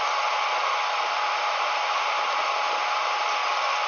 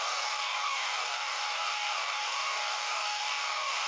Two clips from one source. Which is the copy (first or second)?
second